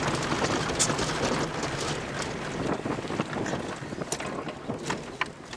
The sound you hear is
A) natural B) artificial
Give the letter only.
A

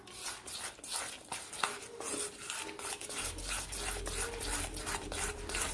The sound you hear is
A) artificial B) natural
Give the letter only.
B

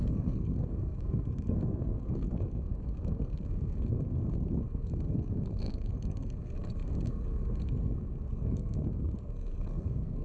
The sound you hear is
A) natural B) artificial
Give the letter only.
B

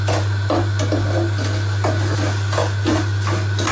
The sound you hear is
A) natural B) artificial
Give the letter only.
A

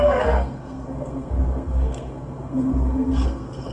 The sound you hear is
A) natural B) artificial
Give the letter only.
B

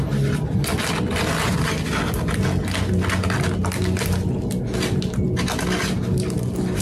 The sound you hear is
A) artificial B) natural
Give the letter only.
B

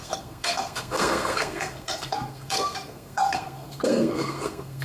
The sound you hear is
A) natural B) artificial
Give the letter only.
B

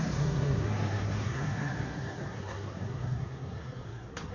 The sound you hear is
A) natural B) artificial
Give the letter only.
B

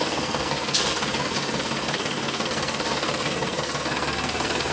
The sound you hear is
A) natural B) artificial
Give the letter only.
B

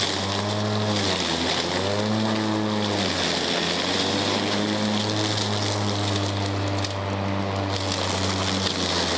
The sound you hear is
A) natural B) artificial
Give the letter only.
A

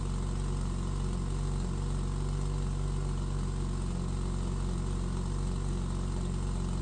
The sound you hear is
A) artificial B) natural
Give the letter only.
B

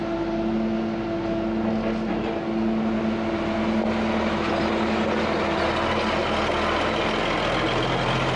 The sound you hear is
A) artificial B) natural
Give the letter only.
B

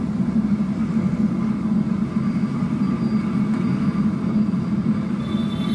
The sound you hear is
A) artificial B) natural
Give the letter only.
B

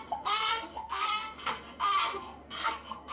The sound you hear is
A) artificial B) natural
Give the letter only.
A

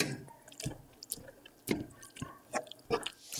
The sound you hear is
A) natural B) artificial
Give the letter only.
A